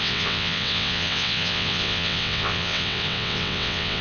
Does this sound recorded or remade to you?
remade